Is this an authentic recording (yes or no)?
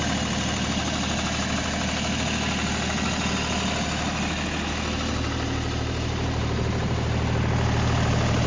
yes